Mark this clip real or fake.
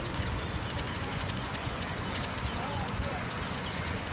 fake